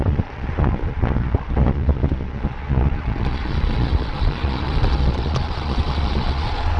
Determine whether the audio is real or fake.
fake